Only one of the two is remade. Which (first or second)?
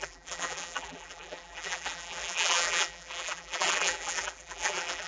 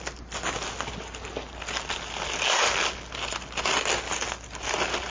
first